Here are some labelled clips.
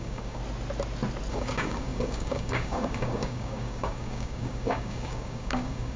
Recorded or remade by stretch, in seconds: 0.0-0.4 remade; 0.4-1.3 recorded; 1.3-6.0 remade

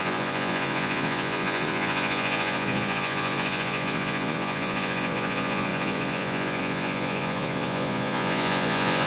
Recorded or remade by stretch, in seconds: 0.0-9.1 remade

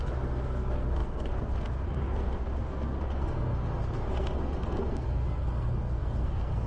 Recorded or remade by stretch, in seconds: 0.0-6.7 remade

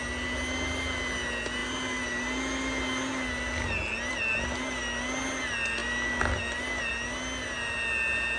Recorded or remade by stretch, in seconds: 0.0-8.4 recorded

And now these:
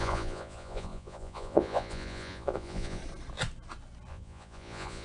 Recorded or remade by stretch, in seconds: 0.0-3.0 remade; 3.0-4.1 recorded; 4.1-5.0 remade

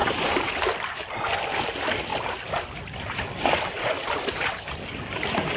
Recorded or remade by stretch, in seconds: 0.0-5.6 recorded

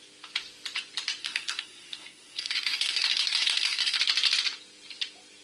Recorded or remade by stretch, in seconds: 0.0-1.2 recorded; 1.2-4.0 remade; 4.0-5.4 recorded

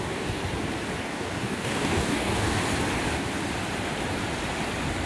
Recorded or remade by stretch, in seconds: 0.0-0.4 remade; 0.4-1.0 recorded; 1.0-2.6 remade; 2.6-5.1 recorded